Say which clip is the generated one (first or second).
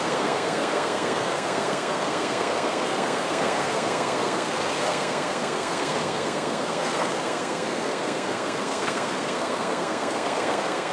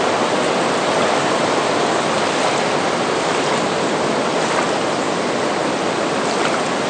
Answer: first